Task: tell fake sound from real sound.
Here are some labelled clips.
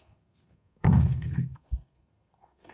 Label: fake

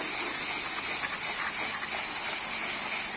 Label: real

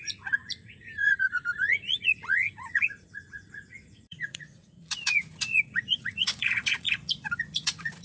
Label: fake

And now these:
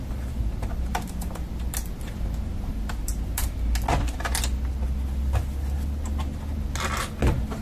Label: real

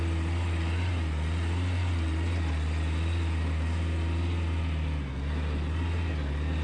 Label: real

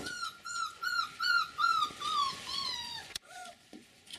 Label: fake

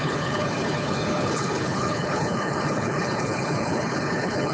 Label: fake